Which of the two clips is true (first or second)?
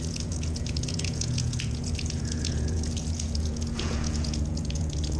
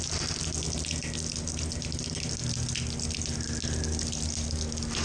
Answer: second